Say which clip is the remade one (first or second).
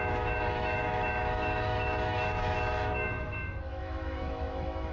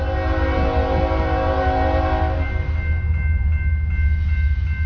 first